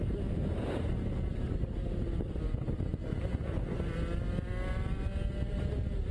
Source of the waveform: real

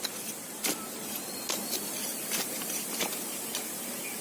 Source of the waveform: real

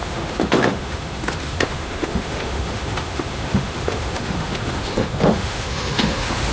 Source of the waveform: fake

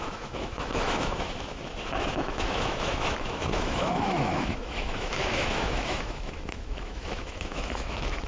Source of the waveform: fake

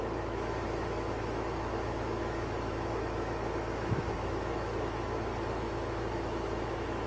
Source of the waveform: fake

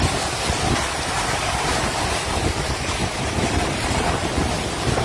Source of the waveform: real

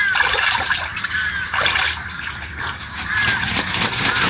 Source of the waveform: real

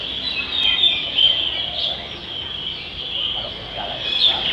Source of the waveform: real